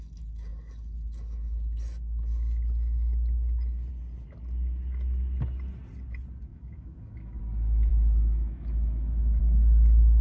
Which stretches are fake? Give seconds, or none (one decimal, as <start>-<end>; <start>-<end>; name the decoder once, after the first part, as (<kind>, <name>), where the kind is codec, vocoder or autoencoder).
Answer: 6.5-7.4 (autoencoder, DAC-VAE); 7.9-9.4